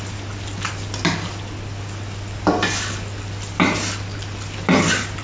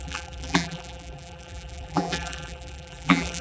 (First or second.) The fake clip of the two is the second